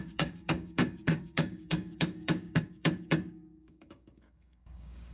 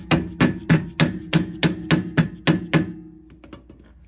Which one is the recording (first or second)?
second